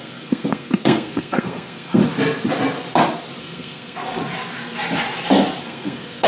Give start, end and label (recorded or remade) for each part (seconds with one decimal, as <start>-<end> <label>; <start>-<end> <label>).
0.0-2.0 remade; 2.0-3.4 recorded; 3.4-4.2 remade; 4.2-5.6 recorded; 5.6-6.3 remade

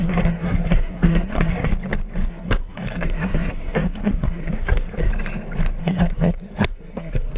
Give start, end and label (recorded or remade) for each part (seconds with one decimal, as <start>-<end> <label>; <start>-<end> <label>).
0.0-1.7 remade; 1.7-2.3 recorded; 2.3-5.1 remade; 5.1-5.8 recorded; 5.8-7.4 remade

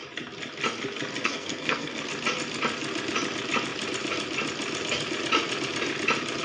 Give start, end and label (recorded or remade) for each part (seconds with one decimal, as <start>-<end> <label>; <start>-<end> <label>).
0.0-1.2 recorded; 1.2-2.0 remade; 2.0-6.4 recorded

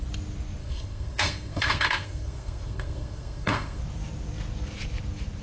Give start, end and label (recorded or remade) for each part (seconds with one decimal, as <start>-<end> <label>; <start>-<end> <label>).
0.0-0.6 recorded; 0.6-3.8 remade; 3.8-5.4 recorded

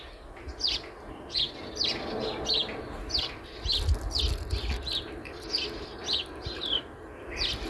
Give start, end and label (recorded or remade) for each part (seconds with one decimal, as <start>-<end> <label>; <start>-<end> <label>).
0.0-7.7 recorded

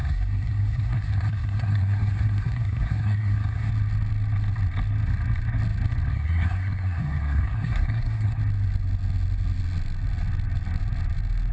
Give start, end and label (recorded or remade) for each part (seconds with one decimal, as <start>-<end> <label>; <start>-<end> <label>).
0.0-3.7 remade; 3.7-6.1 recorded; 6.1-8.4 remade; 8.4-11.5 recorded